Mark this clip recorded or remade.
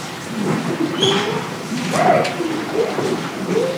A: recorded